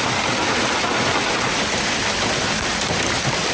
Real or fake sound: real